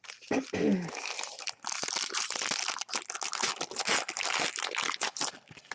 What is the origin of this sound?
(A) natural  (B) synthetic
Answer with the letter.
A